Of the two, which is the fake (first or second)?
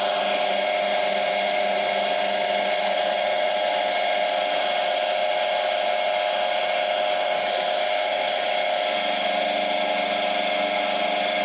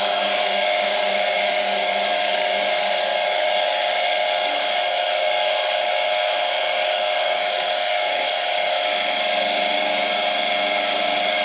second